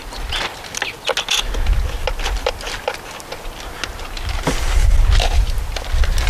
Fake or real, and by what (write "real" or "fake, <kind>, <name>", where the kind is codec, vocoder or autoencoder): real